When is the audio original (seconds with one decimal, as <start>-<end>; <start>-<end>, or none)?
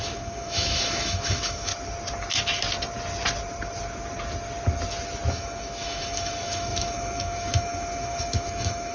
1.7-5.3